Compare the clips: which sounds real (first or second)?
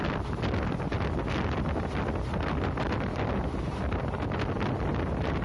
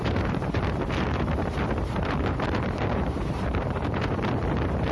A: first